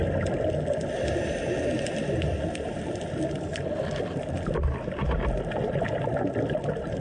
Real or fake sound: real